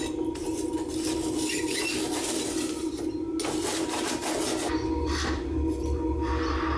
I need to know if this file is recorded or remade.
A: recorded